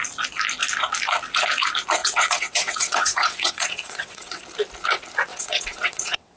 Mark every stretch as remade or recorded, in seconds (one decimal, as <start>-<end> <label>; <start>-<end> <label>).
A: 0.0-2.0 recorded; 2.0-4.4 remade; 4.4-5.3 recorded; 5.3-6.4 remade